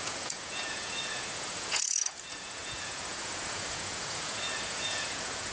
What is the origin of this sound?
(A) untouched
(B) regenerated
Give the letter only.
B